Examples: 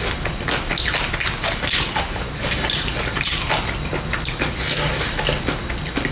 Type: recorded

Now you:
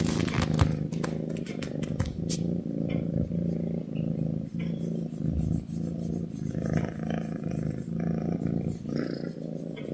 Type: recorded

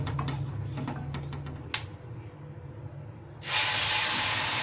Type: recorded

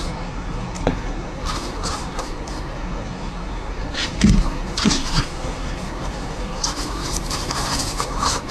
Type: remade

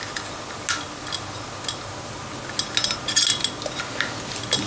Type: recorded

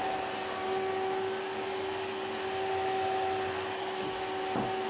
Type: recorded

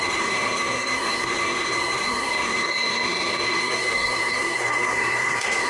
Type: remade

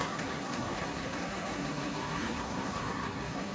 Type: remade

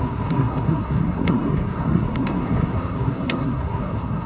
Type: remade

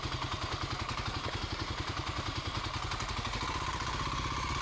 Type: recorded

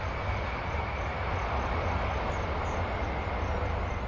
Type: recorded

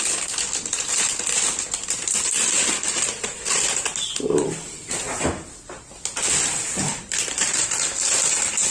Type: recorded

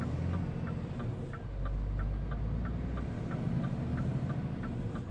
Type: recorded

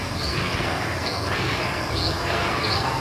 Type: remade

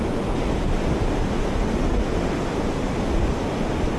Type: recorded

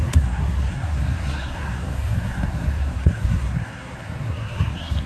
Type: remade